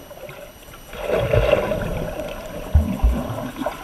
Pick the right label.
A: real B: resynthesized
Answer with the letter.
A